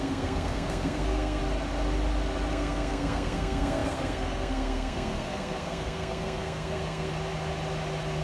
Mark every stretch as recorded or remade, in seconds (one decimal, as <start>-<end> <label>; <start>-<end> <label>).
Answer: 0.0-1.4 remade; 1.4-2.5 recorded; 2.5-7.1 remade; 7.1-8.2 recorded